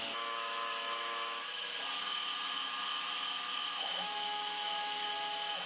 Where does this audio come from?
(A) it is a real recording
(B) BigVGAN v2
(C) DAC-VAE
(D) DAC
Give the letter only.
C